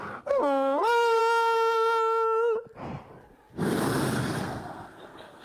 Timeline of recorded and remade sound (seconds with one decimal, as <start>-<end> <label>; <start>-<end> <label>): 0.0-1.2 remade; 1.2-4.4 recorded; 4.4-5.4 remade